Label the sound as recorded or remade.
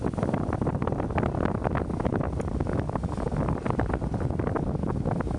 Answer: recorded